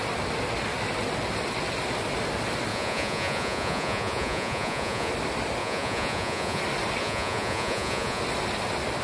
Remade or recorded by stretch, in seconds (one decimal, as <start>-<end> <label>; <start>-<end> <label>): 0.0-2.7 recorded; 2.7-5.1 remade; 5.1-5.6 recorded; 5.6-6.6 remade; 6.6-7.0 recorded; 7.0-8.2 remade; 8.2-9.0 recorded

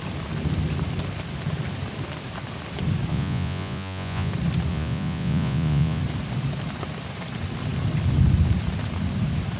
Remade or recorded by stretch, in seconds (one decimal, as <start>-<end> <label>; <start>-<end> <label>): 0.0-3.1 recorded; 3.1-4.3 remade; 4.3-4.7 recorded; 4.7-6.0 remade; 6.0-9.6 recorded

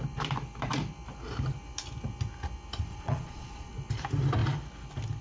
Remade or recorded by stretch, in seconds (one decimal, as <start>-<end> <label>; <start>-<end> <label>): 0.0-2.9 recorded; 2.9-3.7 remade; 3.7-5.2 recorded

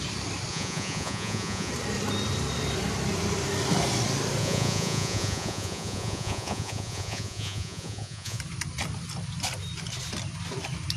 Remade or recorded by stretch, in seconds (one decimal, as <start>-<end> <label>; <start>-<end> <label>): 0.0-0.5 recorded; 0.5-1.7 remade; 1.7-4.4 recorded; 4.4-8.4 remade; 8.4-11.0 recorded

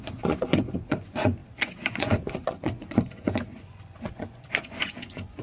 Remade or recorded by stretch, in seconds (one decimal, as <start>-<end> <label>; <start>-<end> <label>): 0.0-5.4 remade

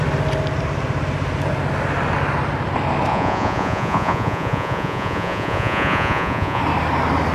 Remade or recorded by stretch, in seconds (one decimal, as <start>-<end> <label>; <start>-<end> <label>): 0.0-3.1 recorded; 3.1-6.6 remade; 6.6-7.3 recorded

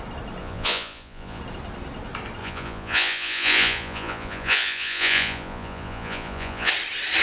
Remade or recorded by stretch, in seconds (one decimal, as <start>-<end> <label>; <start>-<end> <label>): 0.0-0.4 recorded; 0.4-1.4 remade; 1.4-2.4 recorded; 2.4-6.7 remade; 6.7-7.2 recorded